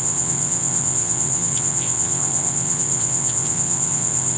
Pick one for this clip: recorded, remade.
remade